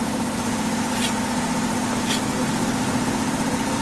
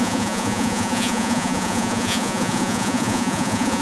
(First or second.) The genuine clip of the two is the first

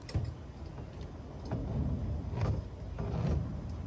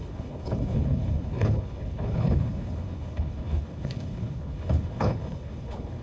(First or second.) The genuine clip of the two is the first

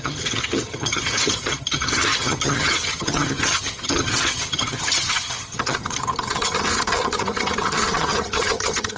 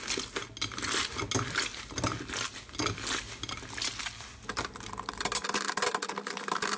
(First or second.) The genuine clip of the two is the second